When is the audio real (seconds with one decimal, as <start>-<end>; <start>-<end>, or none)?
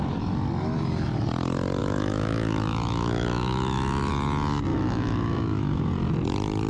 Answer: 0.0-1.8; 4.1-4.7; 5.9-6.7